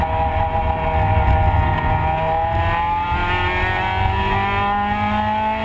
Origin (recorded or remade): recorded